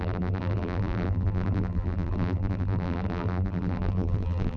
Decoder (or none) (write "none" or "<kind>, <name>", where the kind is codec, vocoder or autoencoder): vocoder, BigVGAN v2